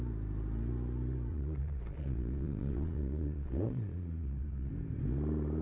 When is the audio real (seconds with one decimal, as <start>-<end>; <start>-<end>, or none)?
0.0-1.3; 4.7-5.6